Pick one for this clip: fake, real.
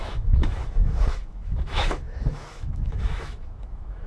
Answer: fake